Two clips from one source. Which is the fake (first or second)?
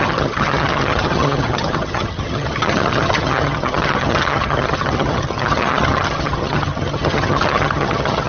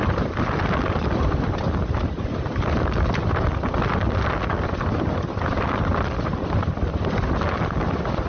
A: first